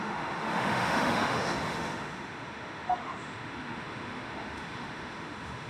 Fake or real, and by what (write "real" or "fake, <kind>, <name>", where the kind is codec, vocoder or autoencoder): fake, autoencoder, DAC-VAE